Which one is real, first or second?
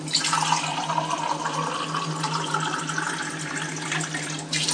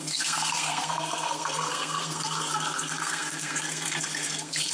first